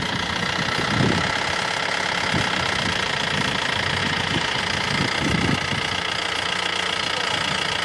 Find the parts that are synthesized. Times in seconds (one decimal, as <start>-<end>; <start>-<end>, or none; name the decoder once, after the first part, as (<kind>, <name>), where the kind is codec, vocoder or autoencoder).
4.0-4.6 (vocoder, Vocos)